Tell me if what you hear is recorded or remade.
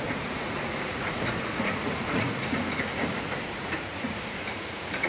remade